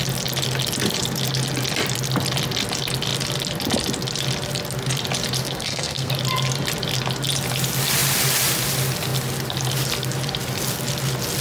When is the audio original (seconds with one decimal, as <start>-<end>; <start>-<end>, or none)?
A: 0.0-5.4; 6.1-11.4